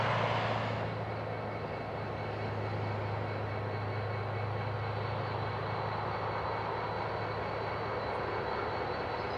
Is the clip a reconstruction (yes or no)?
no